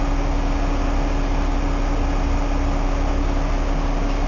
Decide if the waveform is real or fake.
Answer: real